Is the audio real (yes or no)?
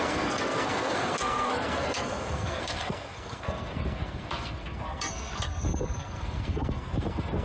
no